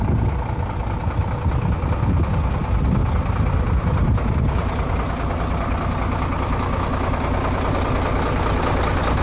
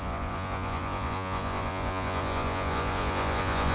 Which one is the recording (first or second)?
first